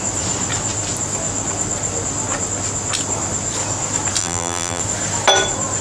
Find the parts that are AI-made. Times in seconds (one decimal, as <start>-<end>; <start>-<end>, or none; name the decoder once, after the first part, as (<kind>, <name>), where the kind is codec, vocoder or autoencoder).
4.2-4.8 (vocoder, BigVGAN v2)